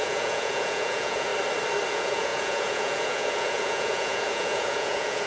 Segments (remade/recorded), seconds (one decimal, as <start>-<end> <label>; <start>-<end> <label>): 0.0-1.3 remade; 1.3-1.9 recorded; 1.9-5.3 remade